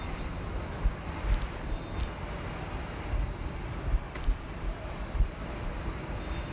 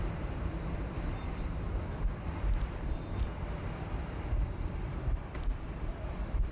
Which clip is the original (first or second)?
first